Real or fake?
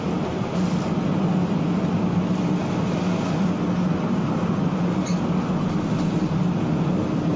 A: real